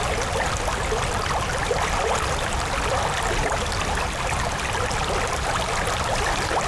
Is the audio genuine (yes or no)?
yes